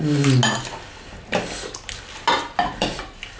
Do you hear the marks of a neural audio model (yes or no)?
no